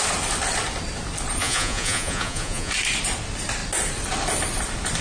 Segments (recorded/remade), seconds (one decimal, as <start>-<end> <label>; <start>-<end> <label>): 0.0-1.4 recorded; 1.4-2.7 remade; 2.7-5.0 recorded